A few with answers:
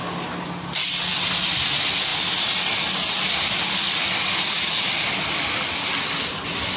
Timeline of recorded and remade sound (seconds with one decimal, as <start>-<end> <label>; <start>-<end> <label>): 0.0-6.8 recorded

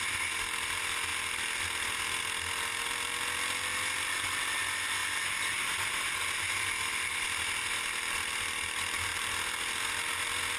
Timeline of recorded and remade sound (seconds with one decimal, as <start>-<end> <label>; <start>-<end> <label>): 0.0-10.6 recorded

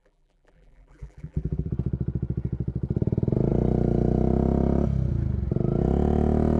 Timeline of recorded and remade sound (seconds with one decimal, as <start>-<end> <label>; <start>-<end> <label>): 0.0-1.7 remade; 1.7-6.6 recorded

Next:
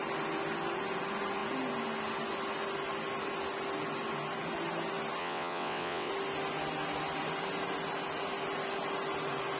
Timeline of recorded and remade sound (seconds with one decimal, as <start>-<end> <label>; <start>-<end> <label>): 0.0-5.2 recorded; 5.2-6.1 remade; 6.1-9.6 recorded

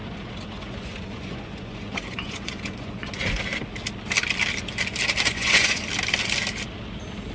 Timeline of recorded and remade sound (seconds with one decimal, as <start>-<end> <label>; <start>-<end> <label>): 0.0-3.4 remade; 3.4-5.3 recorded; 5.3-5.8 remade; 5.8-7.3 recorded

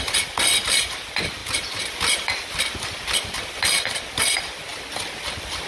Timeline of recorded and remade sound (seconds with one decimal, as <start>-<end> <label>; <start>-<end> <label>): 0.0-5.7 recorded

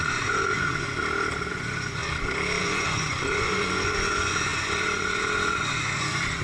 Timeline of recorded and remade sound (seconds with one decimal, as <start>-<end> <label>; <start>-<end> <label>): 0.0-1.0 remade; 1.0-1.5 recorded; 1.5-2.0 remade; 2.0-2.6 recorded; 2.6-6.4 remade

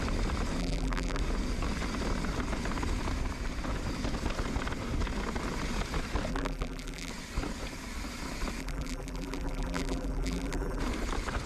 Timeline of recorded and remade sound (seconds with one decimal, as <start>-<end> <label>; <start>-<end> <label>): 0.0-0.6 recorded; 0.6-1.2 remade; 1.2-6.3 recorded; 6.3-7.1 remade; 7.1-8.6 recorded; 8.6-10.8 remade; 10.8-11.5 recorded